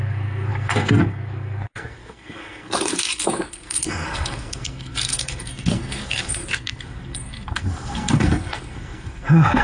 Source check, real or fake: fake